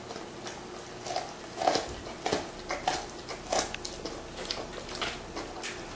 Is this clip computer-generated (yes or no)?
no